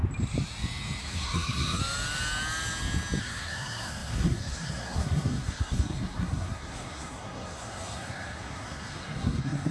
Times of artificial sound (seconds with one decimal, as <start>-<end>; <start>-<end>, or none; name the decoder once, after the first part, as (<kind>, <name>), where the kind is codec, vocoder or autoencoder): 1.0-1.8 (codec, SNAC); 3.2-9.7